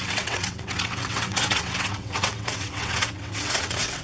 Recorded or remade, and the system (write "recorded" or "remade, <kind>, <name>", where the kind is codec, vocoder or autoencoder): remade, vocoder, WaveNeXt